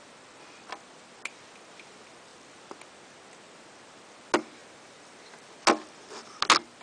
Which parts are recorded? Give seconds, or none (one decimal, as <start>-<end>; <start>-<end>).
0.0-4.6; 5.5-6.8